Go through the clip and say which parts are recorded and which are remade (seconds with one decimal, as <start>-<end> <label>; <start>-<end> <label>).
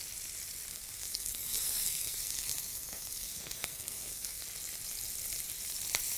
0.0-0.7 recorded; 0.7-4.4 remade; 4.4-6.2 recorded